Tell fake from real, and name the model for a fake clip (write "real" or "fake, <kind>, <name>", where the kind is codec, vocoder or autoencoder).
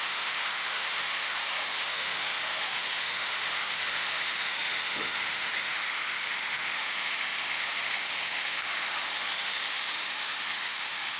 fake, autoencoder, DAC-VAE